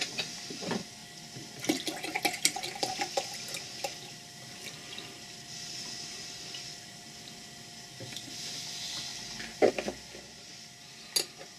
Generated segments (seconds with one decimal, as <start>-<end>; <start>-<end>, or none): none